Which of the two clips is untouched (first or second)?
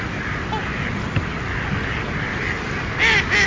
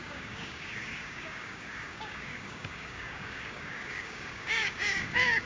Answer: first